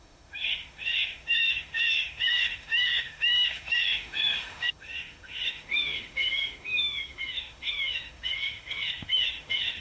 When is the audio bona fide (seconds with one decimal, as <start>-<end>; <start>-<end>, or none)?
none